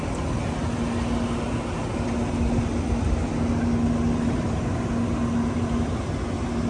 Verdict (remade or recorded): recorded